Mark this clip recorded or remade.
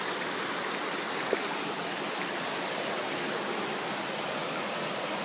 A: recorded